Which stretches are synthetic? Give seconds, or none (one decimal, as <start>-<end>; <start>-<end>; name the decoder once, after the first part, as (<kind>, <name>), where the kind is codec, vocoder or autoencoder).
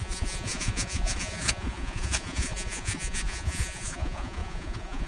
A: 0.0-5.1 (vocoder, Vocos)